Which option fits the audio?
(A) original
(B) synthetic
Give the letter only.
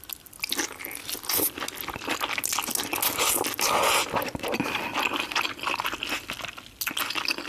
A